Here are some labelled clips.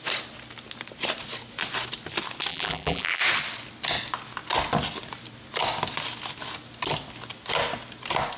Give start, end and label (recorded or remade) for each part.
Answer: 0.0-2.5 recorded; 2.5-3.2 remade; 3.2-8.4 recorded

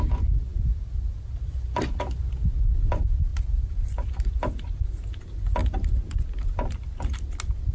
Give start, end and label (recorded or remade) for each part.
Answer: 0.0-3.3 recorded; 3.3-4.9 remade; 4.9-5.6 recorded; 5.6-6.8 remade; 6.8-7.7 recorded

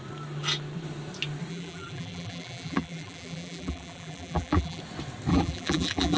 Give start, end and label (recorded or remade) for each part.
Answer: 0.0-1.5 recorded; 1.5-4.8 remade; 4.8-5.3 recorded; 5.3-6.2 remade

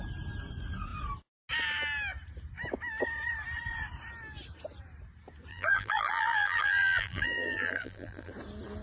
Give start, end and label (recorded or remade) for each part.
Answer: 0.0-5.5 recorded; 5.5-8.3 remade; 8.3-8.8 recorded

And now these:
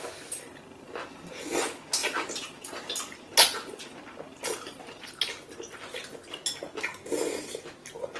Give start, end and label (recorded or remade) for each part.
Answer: 0.0-2.0 recorded; 2.0-2.9 remade; 2.9-4.3 recorded; 4.3-5.1 remade; 5.1-8.2 recorded

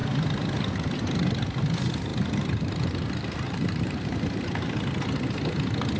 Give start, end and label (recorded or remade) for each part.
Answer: 0.0-2.1 recorded; 2.1-4.8 remade; 4.8-6.0 recorded